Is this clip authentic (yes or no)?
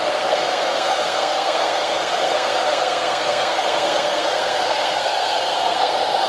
no